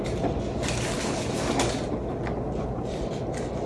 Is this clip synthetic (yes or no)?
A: no